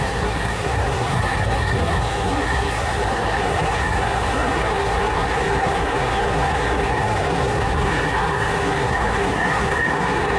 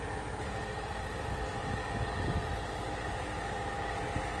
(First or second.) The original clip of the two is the second